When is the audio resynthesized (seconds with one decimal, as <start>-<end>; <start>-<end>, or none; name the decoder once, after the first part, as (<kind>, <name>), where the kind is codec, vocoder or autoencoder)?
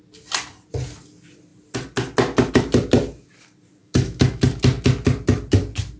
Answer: 3.8-4.4 (autoencoder, DAC-VAE)